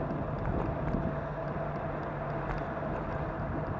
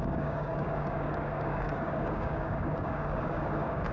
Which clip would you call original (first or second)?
first